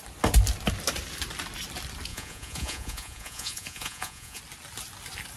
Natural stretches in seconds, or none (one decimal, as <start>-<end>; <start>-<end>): 0.0-2.1; 4.4-5.4